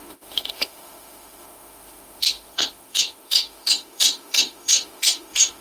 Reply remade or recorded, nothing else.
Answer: remade